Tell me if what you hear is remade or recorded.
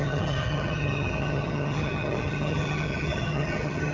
remade